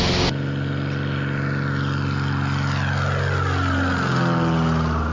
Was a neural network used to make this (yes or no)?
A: no